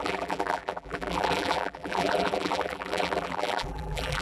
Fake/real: fake